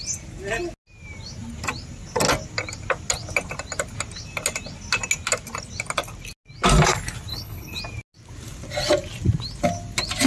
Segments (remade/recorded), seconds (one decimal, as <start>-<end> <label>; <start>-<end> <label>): 0.0-7.3 recorded; 7.3-7.8 remade; 7.8-10.3 recorded